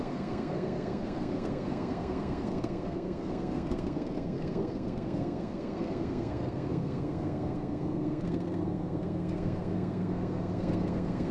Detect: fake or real fake